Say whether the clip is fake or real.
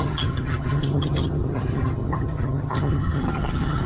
fake